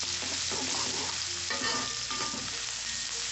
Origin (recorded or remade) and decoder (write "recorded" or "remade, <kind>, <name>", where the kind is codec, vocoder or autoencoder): recorded